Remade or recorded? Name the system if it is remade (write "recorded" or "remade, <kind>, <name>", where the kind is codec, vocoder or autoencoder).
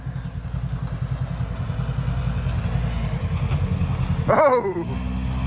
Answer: recorded